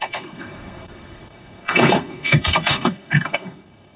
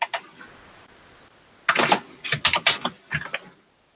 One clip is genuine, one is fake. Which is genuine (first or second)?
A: second